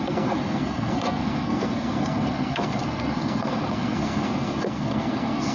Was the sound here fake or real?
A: fake